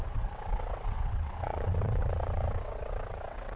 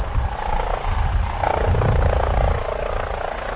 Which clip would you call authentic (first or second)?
second